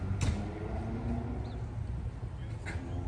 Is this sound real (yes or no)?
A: yes